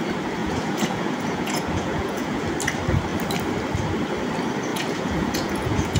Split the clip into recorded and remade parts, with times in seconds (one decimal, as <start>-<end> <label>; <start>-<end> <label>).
0.0-0.4 recorded; 0.4-2.5 remade; 2.5-4.7 recorded; 4.7-6.0 remade